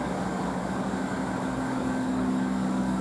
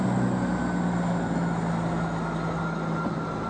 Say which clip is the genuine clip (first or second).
second